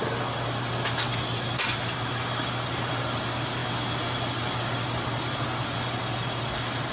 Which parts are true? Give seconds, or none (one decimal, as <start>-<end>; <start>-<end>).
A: 0.0-6.9